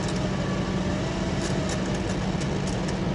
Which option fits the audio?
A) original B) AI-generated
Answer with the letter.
A